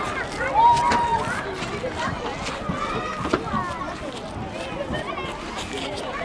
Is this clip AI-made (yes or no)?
no